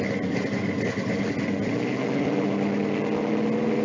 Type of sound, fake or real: real